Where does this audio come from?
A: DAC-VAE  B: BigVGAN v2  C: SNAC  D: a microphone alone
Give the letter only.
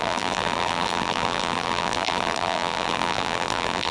B